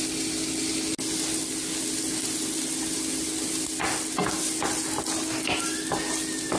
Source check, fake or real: real